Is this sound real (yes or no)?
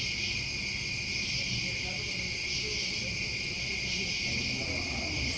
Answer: yes